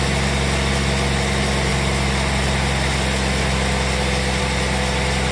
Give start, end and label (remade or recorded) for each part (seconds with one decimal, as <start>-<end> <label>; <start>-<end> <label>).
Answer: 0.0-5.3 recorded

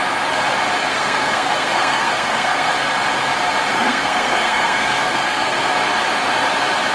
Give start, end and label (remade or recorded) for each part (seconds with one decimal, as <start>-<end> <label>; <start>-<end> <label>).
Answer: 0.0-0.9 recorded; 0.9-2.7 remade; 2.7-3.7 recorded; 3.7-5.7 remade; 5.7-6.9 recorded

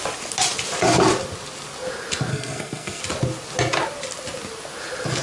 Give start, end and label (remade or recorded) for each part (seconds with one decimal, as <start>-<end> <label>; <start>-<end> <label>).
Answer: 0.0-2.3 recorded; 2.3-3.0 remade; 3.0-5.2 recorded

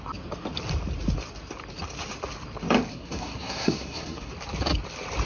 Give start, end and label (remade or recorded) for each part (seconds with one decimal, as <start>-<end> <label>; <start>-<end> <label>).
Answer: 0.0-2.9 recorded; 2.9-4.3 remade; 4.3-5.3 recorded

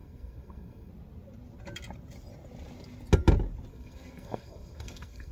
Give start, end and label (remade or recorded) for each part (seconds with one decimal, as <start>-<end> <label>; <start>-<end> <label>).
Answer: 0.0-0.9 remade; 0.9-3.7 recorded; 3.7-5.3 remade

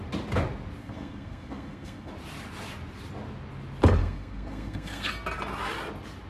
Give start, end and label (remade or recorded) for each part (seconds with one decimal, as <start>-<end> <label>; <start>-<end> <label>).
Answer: 0.0-0.8 recorded; 0.8-2.1 remade; 2.1-4.0 recorded; 4.0-5.1 remade; 5.1-6.3 recorded

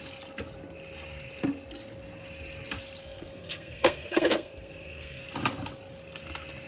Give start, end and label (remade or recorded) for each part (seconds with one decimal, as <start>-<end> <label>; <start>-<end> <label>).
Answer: 0.0-3.0 recorded; 3.0-5.2 remade; 5.2-6.7 recorded